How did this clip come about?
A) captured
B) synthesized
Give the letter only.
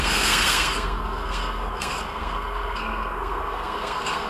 B